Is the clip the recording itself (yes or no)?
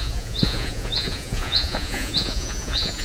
no